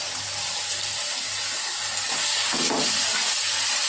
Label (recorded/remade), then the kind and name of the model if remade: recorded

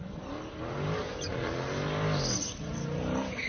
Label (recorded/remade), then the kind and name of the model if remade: recorded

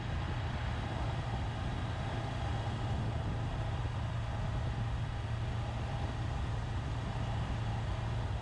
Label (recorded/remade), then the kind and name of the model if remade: recorded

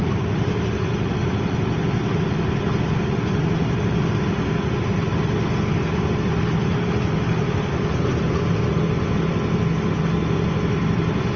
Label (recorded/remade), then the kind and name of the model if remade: recorded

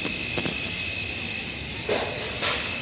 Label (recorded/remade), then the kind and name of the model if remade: recorded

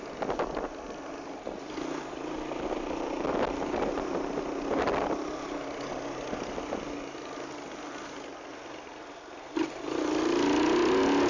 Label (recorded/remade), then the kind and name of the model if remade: recorded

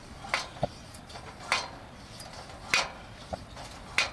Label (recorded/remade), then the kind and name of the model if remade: recorded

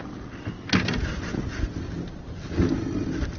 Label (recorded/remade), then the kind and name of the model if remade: recorded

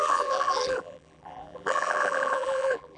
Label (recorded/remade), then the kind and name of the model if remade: remade, vocoder, BigVGAN v2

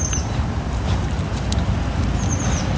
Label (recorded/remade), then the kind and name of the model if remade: remade, vocoder, BigVGAN v2